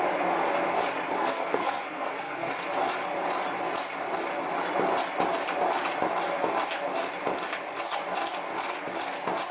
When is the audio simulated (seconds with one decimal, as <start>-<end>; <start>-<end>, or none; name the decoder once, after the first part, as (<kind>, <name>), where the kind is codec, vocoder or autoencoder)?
1.2-2.5 (codec, SNAC)